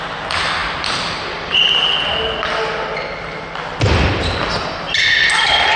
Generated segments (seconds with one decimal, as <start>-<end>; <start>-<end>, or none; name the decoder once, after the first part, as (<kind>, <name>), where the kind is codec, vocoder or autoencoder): none